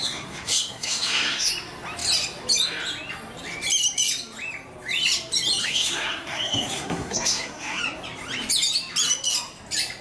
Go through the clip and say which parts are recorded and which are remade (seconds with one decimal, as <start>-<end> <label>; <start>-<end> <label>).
0.0-1.5 remade; 1.5-5.6 recorded; 5.6-7.8 remade; 7.8-10.0 recorded